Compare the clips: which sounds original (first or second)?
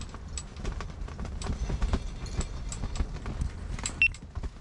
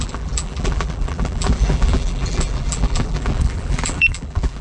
first